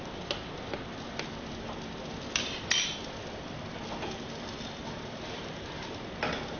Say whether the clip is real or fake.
real